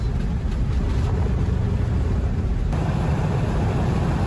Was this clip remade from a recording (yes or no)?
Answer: no